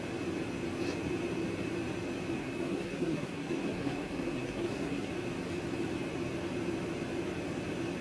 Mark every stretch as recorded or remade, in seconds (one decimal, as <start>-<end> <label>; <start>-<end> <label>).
0.0-2.4 recorded; 2.4-5.1 remade; 5.1-8.0 recorded